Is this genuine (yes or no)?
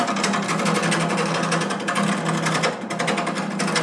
yes